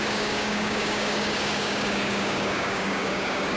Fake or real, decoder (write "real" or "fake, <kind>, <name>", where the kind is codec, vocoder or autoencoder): fake, codec, DAC